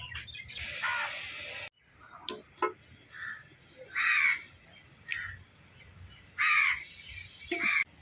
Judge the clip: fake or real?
real